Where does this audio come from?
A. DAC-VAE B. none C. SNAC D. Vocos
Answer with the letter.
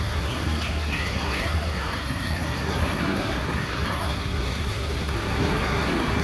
C